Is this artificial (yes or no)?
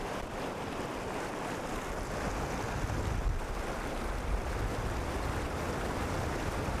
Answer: no